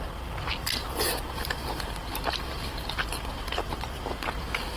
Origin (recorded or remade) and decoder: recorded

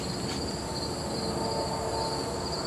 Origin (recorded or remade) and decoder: recorded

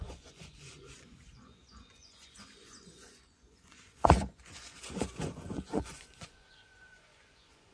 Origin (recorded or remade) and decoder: remade, vocoder, Vocos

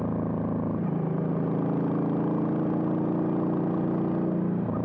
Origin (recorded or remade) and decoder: recorded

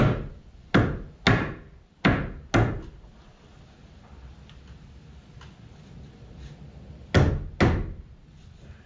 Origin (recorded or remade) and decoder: recorded